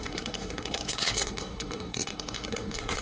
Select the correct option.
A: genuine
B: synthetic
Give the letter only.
B